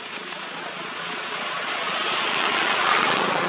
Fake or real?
fake